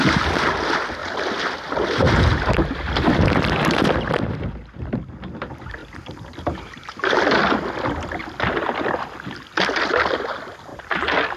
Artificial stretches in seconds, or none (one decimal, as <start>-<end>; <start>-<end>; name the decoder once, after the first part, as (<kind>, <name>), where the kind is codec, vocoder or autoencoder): 1.0-4.5 (vocoder, BigVGAN v2); 5.8-7.5; 10.7-11.4